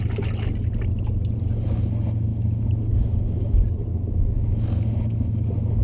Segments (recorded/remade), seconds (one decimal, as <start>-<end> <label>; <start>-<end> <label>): 0.0-5.8 recorded